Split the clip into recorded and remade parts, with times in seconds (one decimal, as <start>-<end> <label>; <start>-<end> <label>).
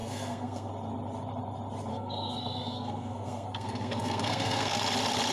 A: 0.0-0.7 remade; 0.7-1.9 recorded; 1.9-4.8 remade; 4.8-5.3 recorded